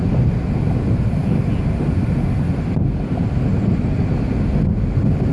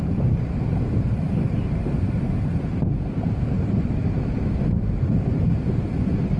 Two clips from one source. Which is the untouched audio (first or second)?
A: first